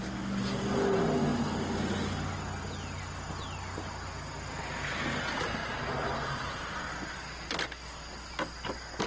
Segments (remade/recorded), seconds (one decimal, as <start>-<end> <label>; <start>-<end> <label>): 0.0-9.1 recorded